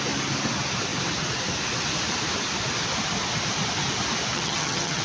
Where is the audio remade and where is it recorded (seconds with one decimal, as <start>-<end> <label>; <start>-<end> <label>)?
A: 0.0-4.3 recorded; 4.3-5.0 remade